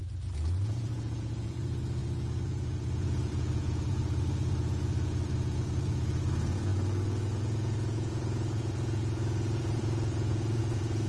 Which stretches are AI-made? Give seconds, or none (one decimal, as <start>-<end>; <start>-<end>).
0.6-11.1